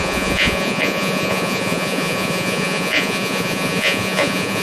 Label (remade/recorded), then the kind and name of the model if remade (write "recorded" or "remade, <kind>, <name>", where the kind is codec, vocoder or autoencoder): remade, vocoder, Vocos